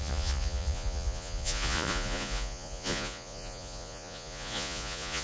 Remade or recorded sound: remade